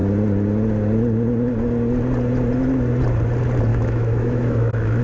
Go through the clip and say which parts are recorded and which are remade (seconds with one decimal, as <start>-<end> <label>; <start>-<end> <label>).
0.0-3.7 recorded; 3.7-5.0 remade